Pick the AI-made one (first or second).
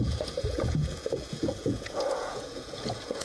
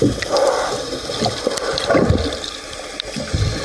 first